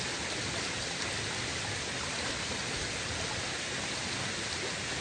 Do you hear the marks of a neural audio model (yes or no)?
no